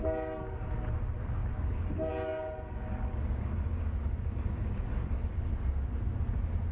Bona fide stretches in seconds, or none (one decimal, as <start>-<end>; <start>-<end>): 0.0-2.9; 5.4-6.7